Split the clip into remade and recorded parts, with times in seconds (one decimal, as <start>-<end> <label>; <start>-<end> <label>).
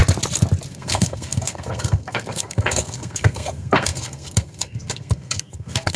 0.0-0.7 recorded; 0.7-6.0 remade